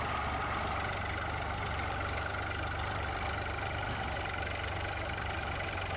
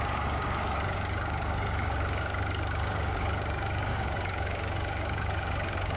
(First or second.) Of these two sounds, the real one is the first